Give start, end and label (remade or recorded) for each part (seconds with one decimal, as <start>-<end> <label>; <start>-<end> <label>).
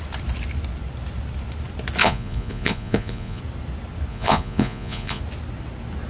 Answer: 0.0-2.0 recorded; 2.0-3.4 remade; 3.4-4.1 recorded; 4.1-5.2 remade; 5.2-6.1 recorded